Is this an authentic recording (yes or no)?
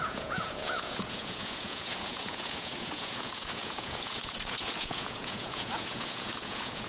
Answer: no